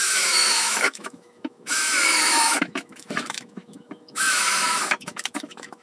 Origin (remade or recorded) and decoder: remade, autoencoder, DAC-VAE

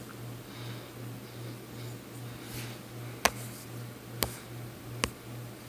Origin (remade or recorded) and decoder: recorded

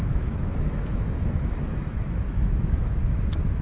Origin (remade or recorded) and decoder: remade, autoencoder, DAC-VAE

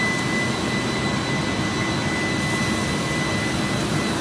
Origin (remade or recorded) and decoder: recorded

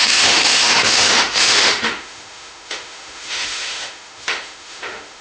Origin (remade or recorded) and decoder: remade, autoencoder, DAC-VAE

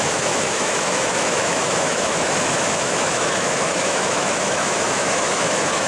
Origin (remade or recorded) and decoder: remade, autoencoder, DAC-VAE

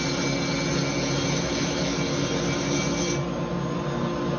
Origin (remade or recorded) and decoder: recorded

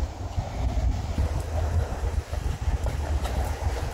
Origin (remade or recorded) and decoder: recorded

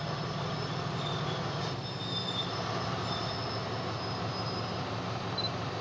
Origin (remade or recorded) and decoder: recorded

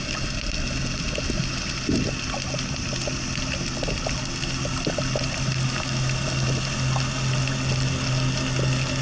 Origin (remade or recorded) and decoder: recorded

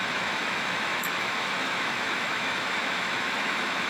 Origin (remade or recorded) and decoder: remade, autoencoder, DAC-VAE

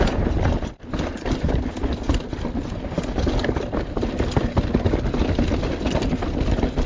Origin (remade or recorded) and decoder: recorded